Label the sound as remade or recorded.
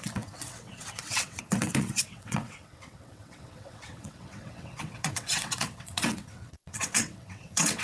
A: remade